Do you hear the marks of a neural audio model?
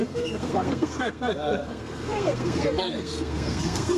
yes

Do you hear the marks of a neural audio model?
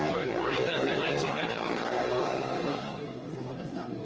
yes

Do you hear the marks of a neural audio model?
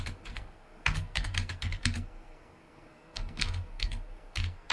yes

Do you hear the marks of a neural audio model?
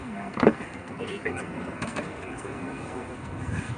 yes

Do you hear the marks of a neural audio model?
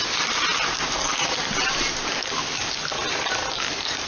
no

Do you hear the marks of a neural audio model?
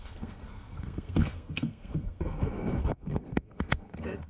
yes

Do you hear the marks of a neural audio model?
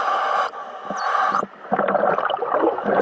no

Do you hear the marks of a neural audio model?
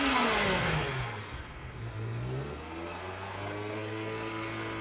yes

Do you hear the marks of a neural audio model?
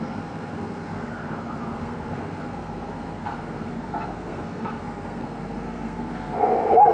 yes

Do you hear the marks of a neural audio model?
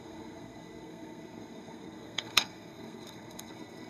yes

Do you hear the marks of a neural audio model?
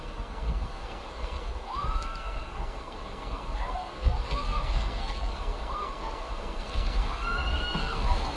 yes